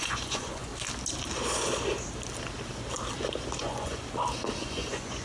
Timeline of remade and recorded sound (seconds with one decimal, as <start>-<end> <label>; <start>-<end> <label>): 0.0-0.7 remade; 0.7-3.6 recorded; 3.6-4.0 remade; 4.0-4.6 recorded; 4.6-5.2 remade